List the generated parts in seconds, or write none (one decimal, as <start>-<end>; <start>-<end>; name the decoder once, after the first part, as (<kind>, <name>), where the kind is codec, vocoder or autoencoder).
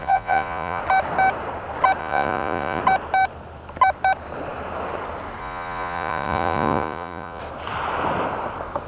0.0-0.8 (vocoder, Vocos); 2.0-2.8; 5.4-7.4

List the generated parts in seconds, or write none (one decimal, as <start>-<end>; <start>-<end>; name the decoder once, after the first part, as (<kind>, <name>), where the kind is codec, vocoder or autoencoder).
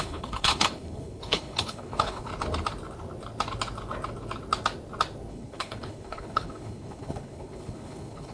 0.0-2.3 (codec, HILCodec); 5.3-8.3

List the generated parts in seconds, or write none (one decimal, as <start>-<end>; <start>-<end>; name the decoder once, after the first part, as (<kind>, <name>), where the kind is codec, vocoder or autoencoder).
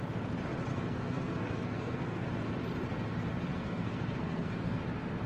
0.7-2.3 (codec, SNAC); 3.5-4.8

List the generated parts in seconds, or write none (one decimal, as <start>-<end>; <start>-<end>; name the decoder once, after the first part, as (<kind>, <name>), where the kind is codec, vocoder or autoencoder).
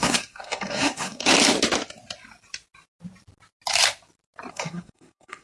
0.0-1.3 (codec, SNAC); 4.5-5.4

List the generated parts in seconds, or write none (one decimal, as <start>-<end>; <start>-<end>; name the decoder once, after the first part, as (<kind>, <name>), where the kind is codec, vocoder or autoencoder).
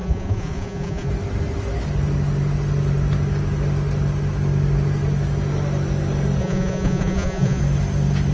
0.0-1.1 (vocoder, Vocos); 6.4-7.6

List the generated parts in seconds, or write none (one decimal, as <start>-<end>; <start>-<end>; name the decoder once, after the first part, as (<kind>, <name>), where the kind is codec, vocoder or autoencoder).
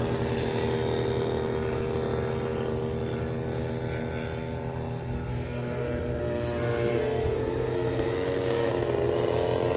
5.3-8.7 (codec, SNAC)